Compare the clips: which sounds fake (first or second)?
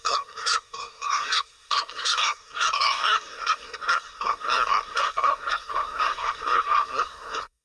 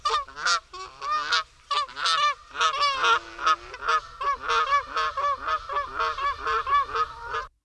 first